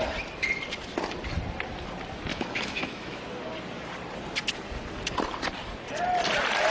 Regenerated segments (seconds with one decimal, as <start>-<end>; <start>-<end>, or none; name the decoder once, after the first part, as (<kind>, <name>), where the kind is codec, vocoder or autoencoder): 2.3-3.2 (autoencoder, DAC-VAE)